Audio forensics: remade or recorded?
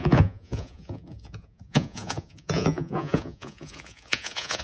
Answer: remade